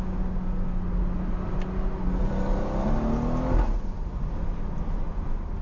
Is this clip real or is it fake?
real